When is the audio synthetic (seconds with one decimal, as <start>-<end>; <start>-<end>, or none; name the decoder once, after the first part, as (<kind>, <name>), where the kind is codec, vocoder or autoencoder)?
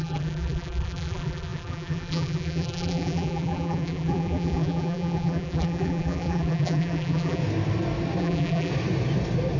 0.0-7.4 (vocoder, BigVGAN v2); 8.2-8.7